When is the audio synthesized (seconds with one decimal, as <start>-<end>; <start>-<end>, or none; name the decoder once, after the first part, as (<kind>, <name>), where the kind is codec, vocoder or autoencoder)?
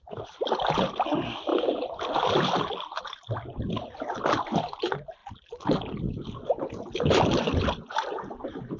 none